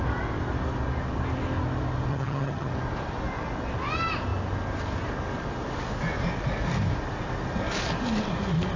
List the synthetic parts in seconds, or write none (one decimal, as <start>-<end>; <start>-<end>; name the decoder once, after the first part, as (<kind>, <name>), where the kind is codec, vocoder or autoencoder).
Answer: 2.1-2.7 (vocoder, HiFi-GAN)